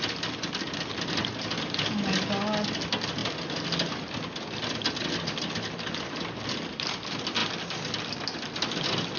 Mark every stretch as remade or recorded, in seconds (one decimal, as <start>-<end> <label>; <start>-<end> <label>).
0.0-9.2 recorded